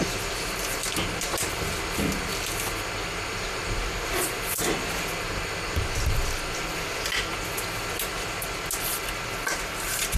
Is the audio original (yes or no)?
yes